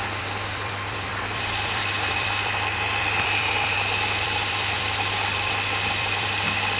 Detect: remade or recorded remade